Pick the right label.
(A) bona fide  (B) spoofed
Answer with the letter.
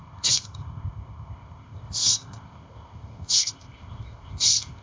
B